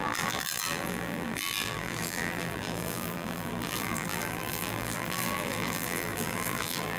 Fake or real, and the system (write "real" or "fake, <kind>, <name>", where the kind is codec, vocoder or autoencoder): fake, vocoder, BigVGAN v2